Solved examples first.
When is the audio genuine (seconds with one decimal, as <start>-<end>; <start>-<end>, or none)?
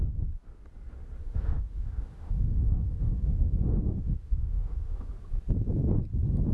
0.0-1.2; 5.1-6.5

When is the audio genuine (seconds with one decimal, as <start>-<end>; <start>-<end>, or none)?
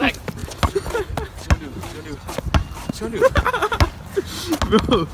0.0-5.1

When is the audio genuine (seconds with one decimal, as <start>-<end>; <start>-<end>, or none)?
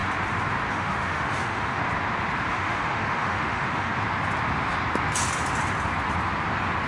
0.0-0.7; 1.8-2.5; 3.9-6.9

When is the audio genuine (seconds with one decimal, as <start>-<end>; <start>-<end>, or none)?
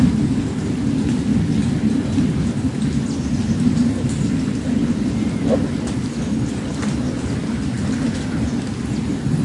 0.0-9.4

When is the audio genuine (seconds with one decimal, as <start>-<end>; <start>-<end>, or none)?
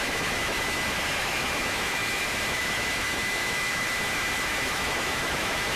none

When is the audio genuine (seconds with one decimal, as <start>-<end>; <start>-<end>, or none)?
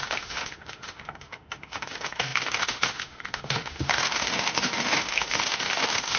none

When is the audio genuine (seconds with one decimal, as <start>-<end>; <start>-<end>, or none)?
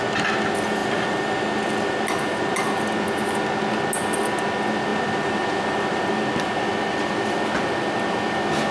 0.0-8.7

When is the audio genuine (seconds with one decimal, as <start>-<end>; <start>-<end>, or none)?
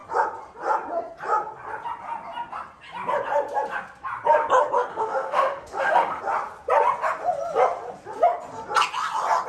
0.0-4.9; 6.2-9.5